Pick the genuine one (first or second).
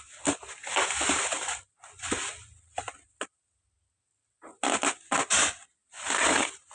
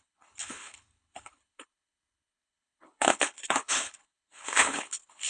first